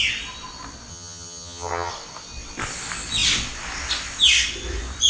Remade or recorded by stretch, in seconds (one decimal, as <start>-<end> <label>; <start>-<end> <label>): 0.0-0.9 recorded; 0.9-1.9 remade; 1.9-5.1 recorded